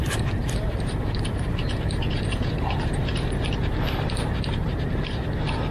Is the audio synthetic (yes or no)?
yes